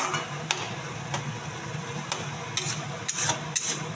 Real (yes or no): yes